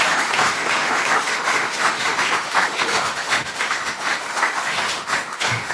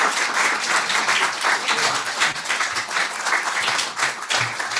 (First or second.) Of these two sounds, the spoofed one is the first